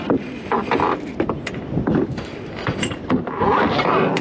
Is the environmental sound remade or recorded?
recorded